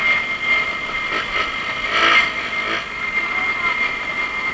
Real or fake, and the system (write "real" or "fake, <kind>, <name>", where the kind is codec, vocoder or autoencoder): real